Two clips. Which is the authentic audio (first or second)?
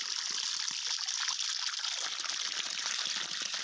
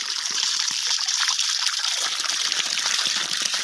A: first